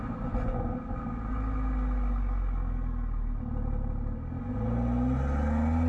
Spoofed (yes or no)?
no